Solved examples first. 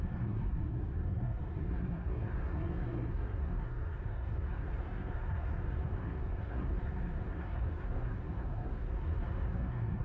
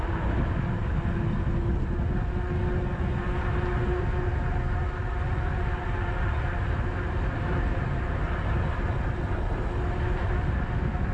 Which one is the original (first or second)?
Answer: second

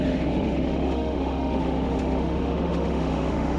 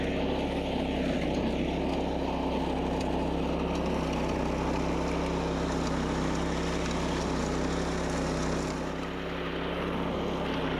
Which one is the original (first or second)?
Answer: second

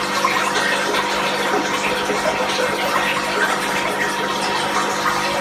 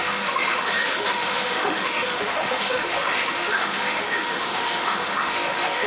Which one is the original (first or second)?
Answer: first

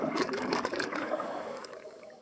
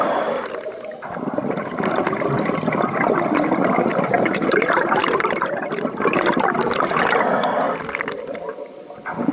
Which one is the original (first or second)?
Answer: second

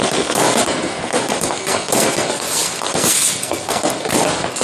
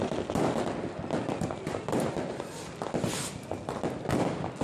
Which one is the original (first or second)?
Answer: second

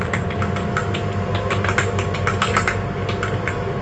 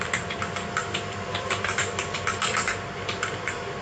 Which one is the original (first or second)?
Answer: first